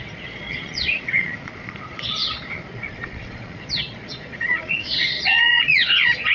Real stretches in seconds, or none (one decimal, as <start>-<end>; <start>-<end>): none